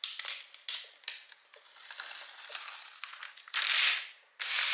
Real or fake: real